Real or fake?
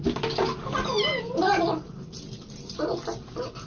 real